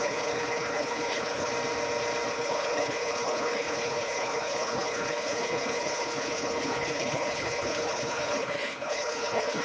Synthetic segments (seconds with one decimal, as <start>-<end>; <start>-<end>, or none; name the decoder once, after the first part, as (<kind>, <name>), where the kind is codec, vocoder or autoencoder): 0.0-1.5 (codec, HILCodec); 2.3-9.6